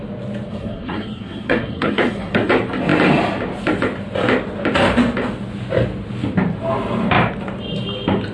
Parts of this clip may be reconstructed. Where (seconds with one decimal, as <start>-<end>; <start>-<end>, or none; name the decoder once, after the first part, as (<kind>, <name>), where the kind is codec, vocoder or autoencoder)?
0.5-2.5 (codec, SNAC)